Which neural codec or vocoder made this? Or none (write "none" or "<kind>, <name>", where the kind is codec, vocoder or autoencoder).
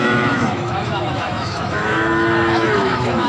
autoencoder, DAC-VAE